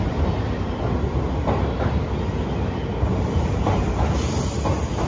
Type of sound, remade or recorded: recorded